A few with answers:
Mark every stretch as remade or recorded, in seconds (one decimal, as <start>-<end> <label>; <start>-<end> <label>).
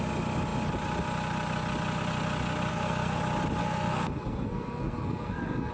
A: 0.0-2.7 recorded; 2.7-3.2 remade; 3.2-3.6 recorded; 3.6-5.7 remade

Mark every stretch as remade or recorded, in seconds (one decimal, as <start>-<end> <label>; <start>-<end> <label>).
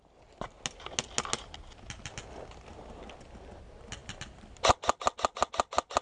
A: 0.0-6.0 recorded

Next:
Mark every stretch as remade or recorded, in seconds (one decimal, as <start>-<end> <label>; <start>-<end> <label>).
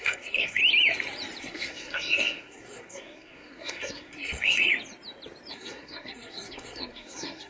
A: 0.0-0.6 remade; 0.6-1.4 recorded; 1.4-4.7 remade; 4.7-5.5 recorded; 5.5-7.5 remade